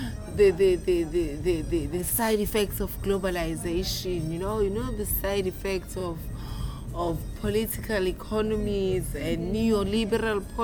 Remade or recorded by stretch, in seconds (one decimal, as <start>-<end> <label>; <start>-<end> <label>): 0.0-2.0 recorded; 2.0-2.5 remade; 2.5-10.6 recorded